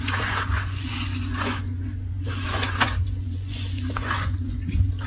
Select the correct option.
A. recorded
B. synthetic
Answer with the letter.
B